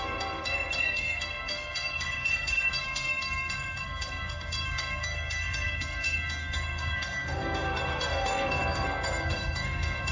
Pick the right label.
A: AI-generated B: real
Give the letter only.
A